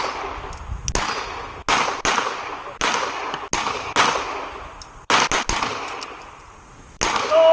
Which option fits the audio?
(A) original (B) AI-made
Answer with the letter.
A